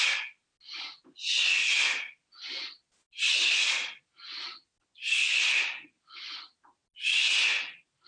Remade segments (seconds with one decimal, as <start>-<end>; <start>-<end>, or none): none